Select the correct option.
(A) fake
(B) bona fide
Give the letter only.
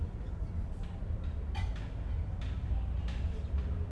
B